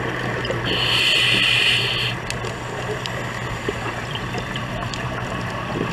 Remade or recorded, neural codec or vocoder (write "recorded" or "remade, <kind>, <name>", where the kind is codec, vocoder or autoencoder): recorded